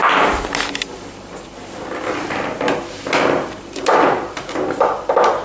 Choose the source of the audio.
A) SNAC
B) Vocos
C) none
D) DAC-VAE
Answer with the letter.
C